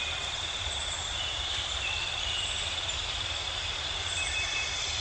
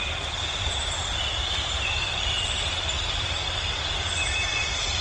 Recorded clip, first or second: second